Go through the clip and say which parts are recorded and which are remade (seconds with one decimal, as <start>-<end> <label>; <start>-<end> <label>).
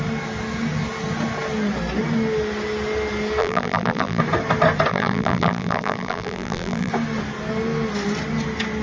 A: 0.0-3.4 recorded; 3.4-4.2 remade; 4.2-4.9 recorded; 4.9-6.9 remade; 6.9-8.8 recorded